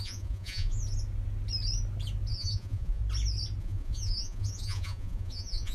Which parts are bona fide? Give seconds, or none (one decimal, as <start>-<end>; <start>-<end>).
0.8-2.3; 3.0-3.6